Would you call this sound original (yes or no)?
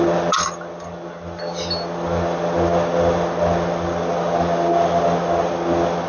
yes